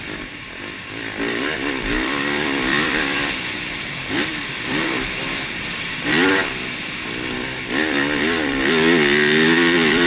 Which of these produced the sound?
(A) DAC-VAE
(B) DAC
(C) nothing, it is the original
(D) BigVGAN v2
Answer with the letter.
D